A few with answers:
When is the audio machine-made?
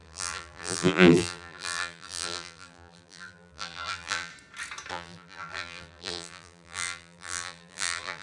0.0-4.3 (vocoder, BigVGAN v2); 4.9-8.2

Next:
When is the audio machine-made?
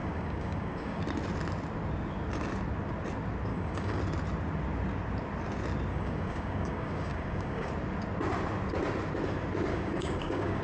0.0-1.0 (codec, DAC); 3.5-4.0; 5.9-7.7; 9.7-10.6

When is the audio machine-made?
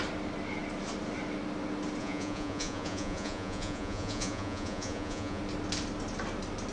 2.0-5.4 (vocoder, Vocos)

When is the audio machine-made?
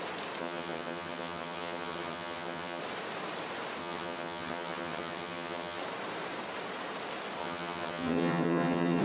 0.4-2.8 (vocoder, HiFi-GAN); 3.8-5.8; 7.4-9.0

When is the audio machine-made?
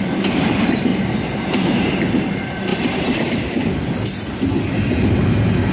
0.9-2.3 (vocoder, BigVGAN v2); 2.7-3.6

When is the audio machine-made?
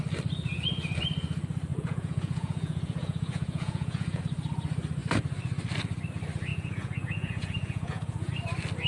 1.7-4.2 (vocoder, Vocos); 6.5-8.3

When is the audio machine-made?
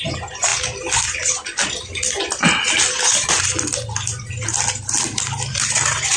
none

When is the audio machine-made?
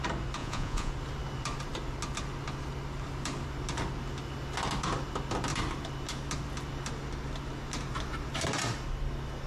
0.4-0.9 (vocoder, Vocos)